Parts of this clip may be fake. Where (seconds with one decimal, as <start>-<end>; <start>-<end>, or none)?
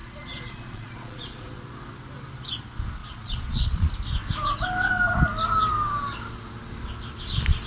0.0-1.5; 3.0-3.9